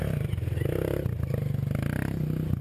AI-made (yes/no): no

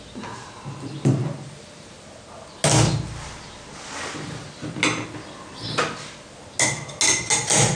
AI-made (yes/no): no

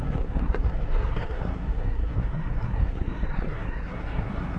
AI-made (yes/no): yes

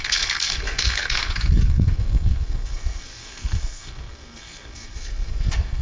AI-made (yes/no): yes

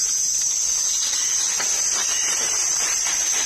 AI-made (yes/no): no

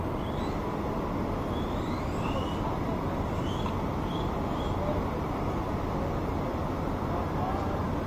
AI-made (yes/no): no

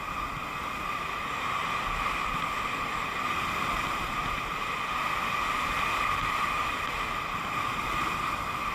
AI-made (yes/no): no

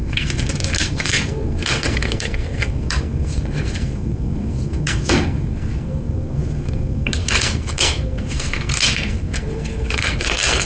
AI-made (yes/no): yes